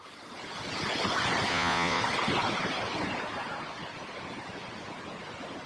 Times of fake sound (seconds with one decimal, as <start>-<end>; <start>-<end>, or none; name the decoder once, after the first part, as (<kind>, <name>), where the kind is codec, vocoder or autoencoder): 1.5-2.0 (vocoder, Vocos)